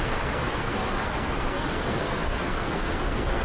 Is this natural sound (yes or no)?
no